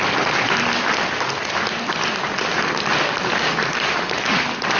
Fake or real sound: real